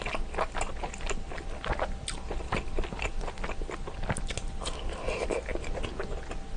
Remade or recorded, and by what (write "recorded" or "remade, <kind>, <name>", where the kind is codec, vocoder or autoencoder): recorded